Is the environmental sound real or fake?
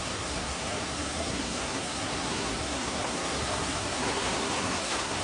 fake